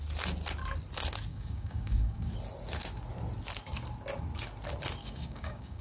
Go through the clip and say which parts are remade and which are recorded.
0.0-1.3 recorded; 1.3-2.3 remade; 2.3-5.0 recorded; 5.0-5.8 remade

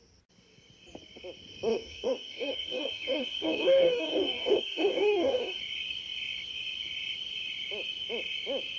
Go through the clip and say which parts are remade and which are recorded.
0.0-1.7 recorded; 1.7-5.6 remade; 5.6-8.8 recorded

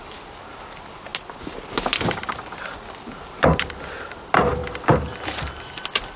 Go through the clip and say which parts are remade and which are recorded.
0.0-6.2 recorded

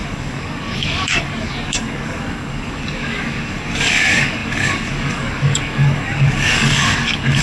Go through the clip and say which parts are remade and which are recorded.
0.0-7.4 remade

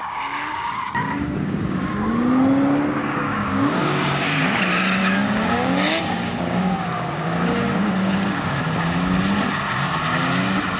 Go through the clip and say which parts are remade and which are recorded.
0.0-2.1 remade; 2.1-3.0 recorded; 3.0-4.6 remade; 4.6-5.0 recorded; 5.0-8.6 remade; 8.6-10.8 recorded

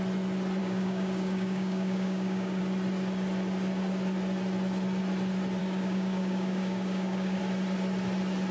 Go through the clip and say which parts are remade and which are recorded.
0.0-0.6 recorded; 0.6-2.6 remade; 2.6-5.6 recorded; 5.6-7.4 remade; 7.4-8.5 recorded